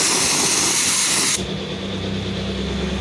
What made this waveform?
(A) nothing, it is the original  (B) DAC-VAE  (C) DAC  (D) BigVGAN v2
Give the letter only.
A